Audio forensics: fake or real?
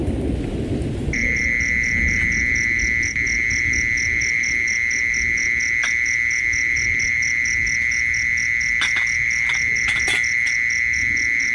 real